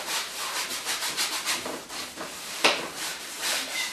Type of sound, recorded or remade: remade